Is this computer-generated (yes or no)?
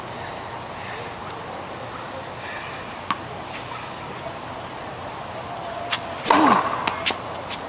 no